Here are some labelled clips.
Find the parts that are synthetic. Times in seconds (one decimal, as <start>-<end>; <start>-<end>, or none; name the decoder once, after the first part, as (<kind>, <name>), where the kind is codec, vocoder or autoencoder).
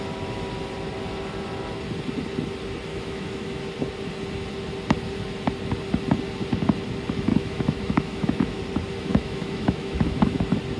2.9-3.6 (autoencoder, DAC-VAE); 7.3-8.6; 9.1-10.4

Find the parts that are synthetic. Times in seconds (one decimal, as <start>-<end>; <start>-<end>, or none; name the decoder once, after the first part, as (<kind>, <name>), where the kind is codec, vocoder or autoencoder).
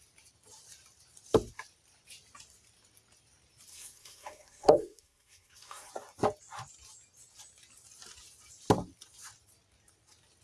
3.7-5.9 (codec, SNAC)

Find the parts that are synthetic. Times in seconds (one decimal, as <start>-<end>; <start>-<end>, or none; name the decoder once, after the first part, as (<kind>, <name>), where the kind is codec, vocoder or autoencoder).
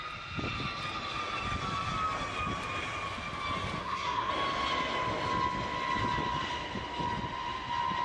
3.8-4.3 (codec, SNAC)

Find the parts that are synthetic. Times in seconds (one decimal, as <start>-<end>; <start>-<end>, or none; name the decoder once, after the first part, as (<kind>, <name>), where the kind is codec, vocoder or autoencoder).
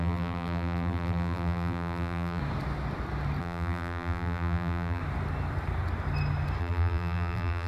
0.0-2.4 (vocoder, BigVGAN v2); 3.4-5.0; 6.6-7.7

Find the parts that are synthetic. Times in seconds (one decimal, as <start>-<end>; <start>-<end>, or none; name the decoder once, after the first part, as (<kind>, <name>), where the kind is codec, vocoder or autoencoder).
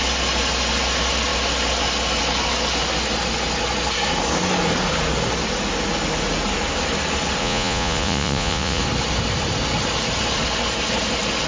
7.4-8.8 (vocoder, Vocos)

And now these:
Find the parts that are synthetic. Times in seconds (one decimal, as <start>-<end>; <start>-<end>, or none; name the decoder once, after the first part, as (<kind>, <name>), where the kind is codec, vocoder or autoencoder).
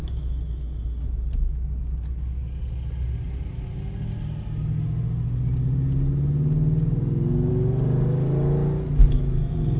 none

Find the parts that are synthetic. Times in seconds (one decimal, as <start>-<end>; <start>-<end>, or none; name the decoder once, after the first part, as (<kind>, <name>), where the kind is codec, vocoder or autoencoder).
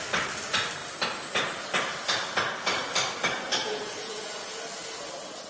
3.6-4.6 (vocoder, Vocos)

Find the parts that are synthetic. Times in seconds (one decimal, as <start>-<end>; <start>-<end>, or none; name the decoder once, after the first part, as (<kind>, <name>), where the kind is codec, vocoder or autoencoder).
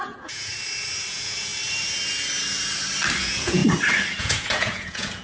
0.0-0.5 (vocoder, Vocos); 1.1-1.5; 3.2-3.6; 4.2-5.2